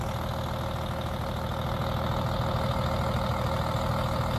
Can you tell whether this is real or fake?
real